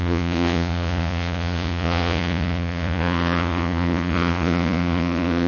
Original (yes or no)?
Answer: no